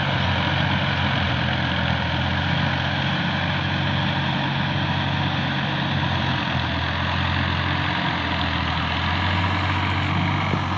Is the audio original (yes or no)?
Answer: yes